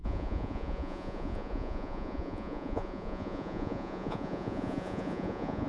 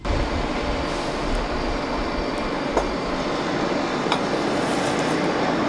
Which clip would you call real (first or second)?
second